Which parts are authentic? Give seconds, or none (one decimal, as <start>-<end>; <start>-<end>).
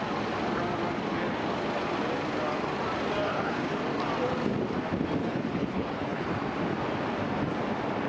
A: 0.0-3.3; 3.8-5.2; 6.3-8.1